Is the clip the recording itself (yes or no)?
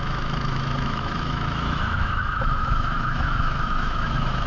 no